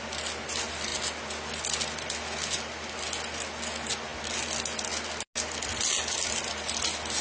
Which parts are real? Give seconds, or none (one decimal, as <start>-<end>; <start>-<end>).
0.0-7.2